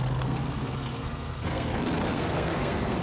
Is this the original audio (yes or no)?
no